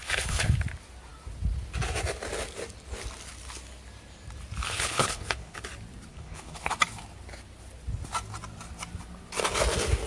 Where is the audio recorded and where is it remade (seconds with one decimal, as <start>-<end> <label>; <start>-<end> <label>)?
0.0-0.6 remade; 0.6-4.6 recorded; 4.6-5.6 remade; 5.6-6.1 recorded; 6.1-6.7 remade; 6.7-10.1 recorded